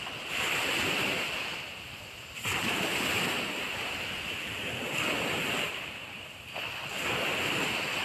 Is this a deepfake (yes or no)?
yes